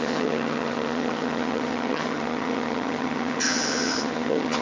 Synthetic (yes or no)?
yes